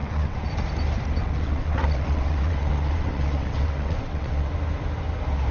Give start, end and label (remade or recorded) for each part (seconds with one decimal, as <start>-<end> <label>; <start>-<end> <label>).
0.0-0.5 remade; 0.5-1.2 recorded; 1.2-4.5 remade; 4.5-5.5 recorded